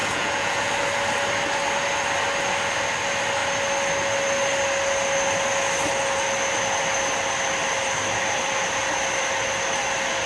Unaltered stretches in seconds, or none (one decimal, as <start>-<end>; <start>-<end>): 0.7-10.3